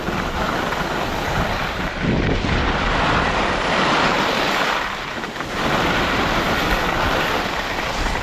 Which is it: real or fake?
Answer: real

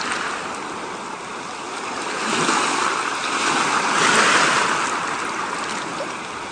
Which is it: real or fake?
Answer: real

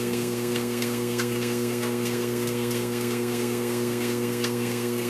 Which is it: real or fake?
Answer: fake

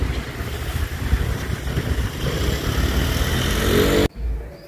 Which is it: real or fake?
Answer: real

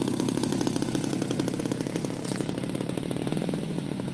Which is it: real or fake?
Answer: fake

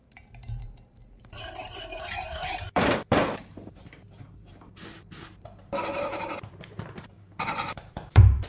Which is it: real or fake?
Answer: fake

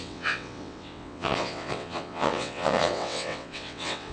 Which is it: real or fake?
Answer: fake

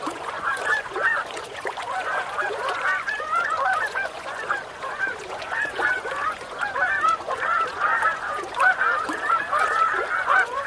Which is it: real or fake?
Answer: fake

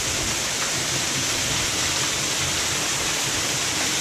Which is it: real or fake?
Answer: real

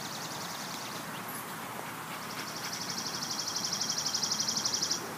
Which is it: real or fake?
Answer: real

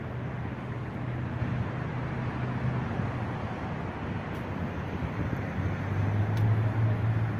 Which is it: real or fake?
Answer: real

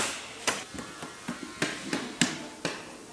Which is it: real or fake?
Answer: real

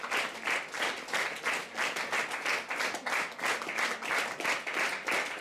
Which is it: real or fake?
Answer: real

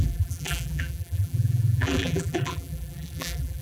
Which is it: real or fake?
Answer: fake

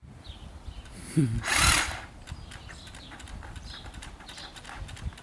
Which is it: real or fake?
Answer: real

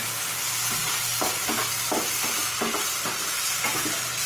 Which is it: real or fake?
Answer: real